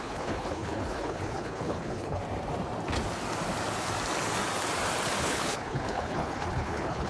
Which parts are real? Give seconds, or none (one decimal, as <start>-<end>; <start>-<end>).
2.2-5.2